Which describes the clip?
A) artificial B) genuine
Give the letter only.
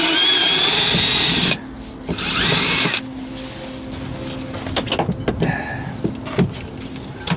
B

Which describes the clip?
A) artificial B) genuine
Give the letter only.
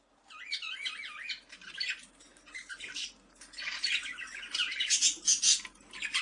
B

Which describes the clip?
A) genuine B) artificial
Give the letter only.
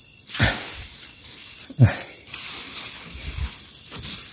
A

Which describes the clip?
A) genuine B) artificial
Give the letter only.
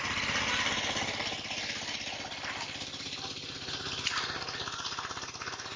A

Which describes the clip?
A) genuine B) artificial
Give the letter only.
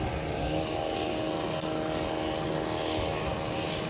A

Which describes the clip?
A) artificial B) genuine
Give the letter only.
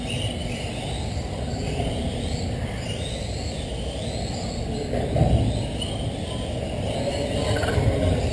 B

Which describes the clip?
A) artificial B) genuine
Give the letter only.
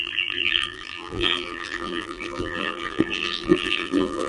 A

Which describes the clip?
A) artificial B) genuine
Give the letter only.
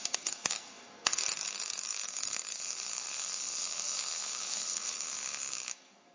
A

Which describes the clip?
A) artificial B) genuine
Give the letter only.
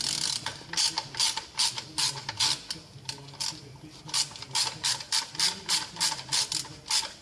B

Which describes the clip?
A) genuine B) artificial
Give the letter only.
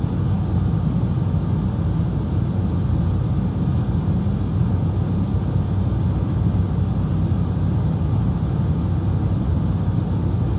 A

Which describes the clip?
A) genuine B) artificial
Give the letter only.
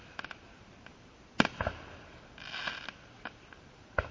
A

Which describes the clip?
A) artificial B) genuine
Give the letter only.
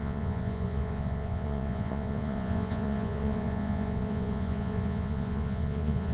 A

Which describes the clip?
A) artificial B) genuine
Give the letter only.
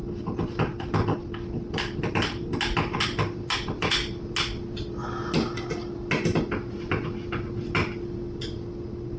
B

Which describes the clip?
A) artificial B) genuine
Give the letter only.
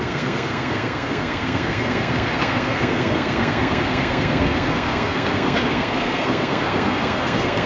A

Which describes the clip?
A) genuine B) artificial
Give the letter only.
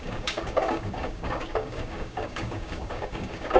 B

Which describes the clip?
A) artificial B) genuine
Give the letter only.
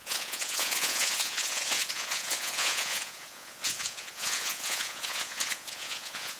A